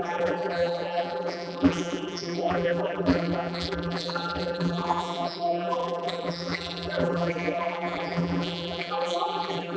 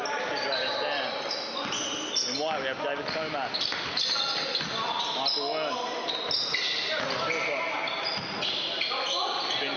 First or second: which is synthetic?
first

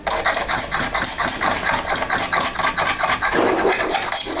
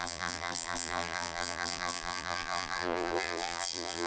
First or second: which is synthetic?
second